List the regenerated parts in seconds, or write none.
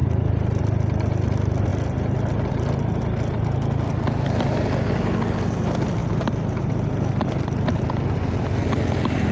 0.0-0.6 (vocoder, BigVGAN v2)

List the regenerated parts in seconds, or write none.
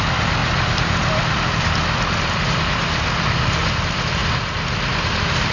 0.0-4.2 (vocoder, BigVGAN v2); 4.9-5.5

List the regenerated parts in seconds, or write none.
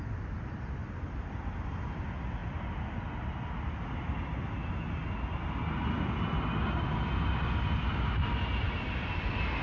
none